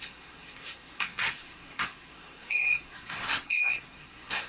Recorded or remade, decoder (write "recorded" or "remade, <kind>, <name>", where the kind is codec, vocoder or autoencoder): remade, codec, SNAC